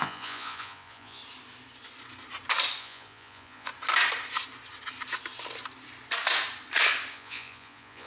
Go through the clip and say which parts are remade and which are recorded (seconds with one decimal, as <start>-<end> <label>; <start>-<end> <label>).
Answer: 0.0-1.2 remade; 1.2-2.8 recorded; 2.8-3.7 remade; 3.7-7.1 recorded; 7.1-8.1 remade